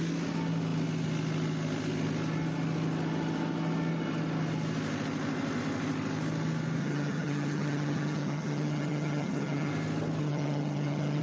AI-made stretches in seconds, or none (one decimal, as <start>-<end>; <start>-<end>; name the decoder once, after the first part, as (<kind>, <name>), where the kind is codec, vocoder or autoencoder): 6.8-9.7 (vocoder, HiFi-GAN); 10.2-11.2